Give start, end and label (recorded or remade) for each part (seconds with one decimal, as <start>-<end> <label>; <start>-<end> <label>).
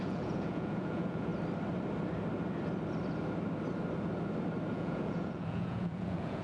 0.0-1.3 remade; 1.3-4.7 recorded; 4.7-6.4 remade